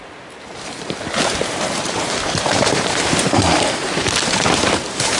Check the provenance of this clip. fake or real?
fake